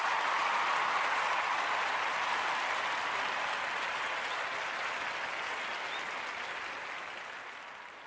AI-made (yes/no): no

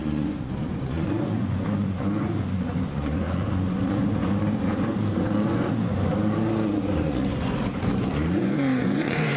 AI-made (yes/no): yes